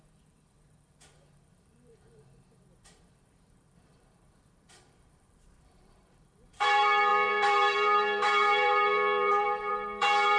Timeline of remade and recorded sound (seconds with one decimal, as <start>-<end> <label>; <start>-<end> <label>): 0.0-10.4 remade